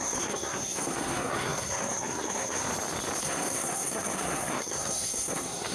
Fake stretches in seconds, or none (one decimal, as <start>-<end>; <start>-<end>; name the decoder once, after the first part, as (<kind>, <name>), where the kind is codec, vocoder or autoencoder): 0.0-2.7 (codec, SNAC); 3.2-5.7